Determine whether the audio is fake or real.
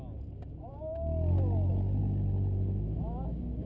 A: real